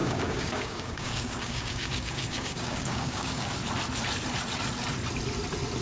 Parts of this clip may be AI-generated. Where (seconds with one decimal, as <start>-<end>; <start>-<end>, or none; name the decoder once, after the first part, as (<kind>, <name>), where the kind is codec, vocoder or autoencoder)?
0.0-3.5 (codec, DAC)